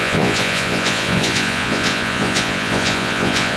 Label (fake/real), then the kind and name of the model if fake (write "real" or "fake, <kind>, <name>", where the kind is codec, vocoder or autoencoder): fake, vocoder, Vocos